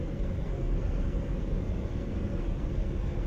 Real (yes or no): no